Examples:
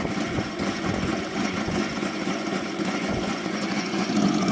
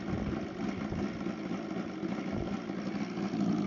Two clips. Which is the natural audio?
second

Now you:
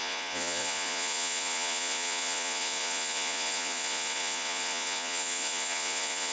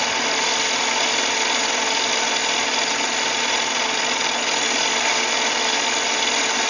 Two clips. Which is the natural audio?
second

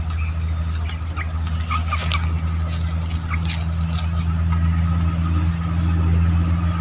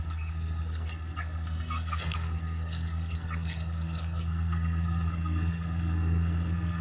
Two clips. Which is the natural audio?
first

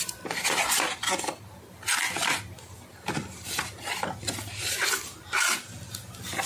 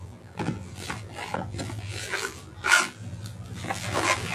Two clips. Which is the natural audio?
first